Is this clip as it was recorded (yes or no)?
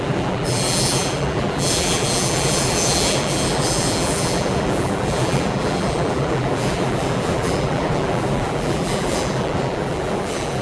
no